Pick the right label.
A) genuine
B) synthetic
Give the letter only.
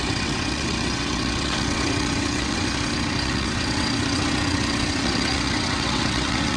B